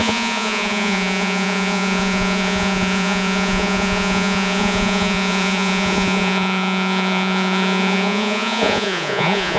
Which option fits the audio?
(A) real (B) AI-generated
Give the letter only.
B